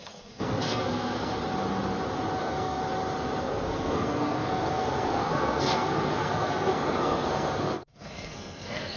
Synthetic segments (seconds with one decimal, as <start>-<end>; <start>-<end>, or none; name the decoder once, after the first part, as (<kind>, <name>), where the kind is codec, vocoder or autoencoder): 0.0-1.3 (codec, SNAC); 2.4-2.8; 3.4-9.0